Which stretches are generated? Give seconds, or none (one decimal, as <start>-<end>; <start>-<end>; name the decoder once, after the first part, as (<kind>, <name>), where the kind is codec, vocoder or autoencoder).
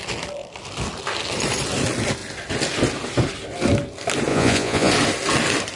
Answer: 4.3-4.9 (vocoder, Vocos)